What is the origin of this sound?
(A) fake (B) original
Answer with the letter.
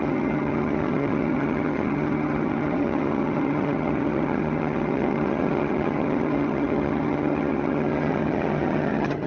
A